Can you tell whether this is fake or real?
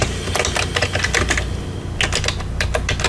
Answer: real